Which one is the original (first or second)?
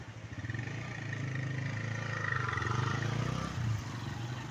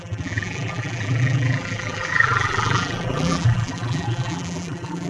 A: first